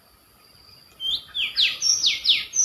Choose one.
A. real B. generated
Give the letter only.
A